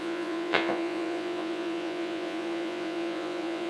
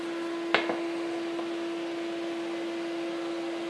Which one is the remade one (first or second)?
first